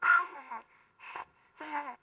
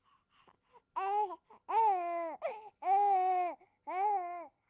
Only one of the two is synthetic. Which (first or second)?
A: first